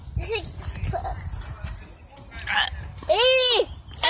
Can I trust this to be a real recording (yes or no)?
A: yes